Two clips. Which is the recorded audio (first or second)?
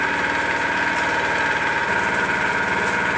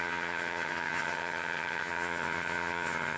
first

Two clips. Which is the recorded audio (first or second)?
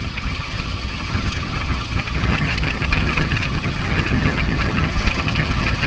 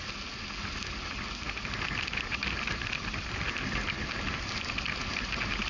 second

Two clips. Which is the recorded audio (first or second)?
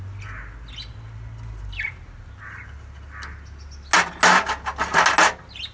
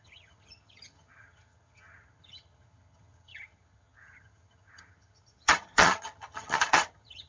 first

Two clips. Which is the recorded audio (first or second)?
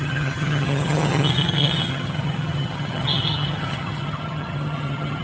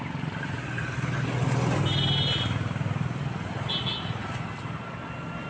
second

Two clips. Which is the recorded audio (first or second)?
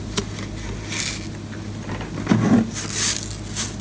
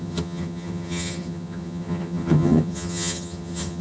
first